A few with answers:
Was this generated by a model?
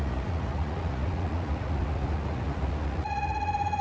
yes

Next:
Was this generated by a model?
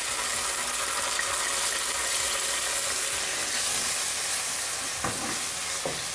no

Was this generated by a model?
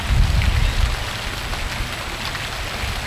no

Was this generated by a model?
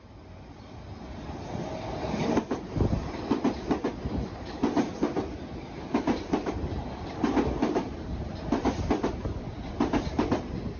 no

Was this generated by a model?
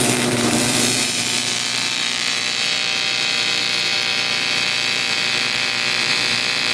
yes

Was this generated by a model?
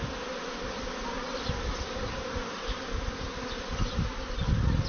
no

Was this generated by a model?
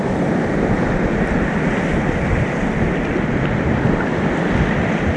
no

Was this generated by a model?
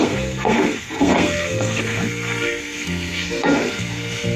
yes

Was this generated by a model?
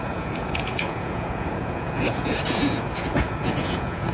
yes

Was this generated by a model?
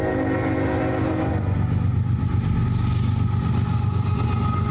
no